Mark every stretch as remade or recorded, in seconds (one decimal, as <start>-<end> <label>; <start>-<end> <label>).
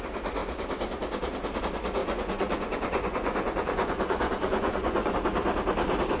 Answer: 0.0-2.0 recorded; 2.0-5.1 remade; 5.1-6.2 recorded